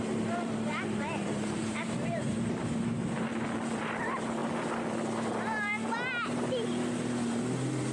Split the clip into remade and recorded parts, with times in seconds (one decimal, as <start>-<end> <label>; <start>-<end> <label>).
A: 0.0-3.3 remade; 3.3-4.0 recorded; 4.0-4.4 remade; 4.4-7.4 recorded; 7.4-7.9 remade